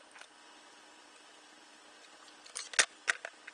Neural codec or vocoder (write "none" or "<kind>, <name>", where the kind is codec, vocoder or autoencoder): none